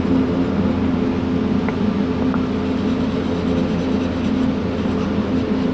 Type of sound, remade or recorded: recorded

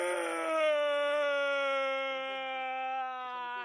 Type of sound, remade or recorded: recorded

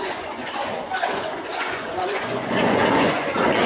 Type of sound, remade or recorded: remade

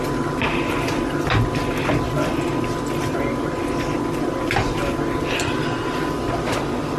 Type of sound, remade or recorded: recorded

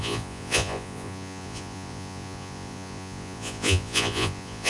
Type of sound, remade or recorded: remade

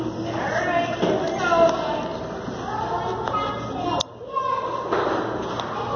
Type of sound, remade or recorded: recorded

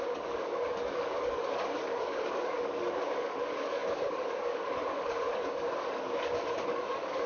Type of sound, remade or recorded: remade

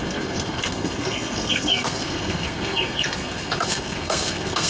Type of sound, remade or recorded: remade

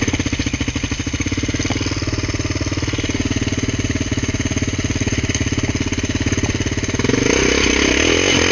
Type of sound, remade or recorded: recorded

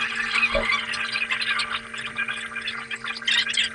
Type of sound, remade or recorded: recorded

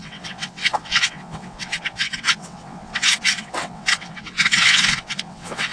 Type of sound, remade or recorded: remade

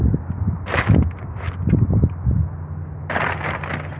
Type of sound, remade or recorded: recorded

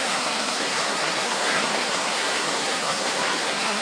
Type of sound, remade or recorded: remade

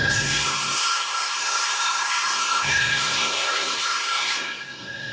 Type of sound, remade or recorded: remade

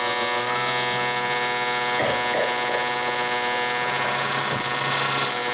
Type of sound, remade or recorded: recorded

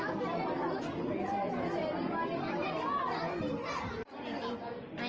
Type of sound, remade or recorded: recorded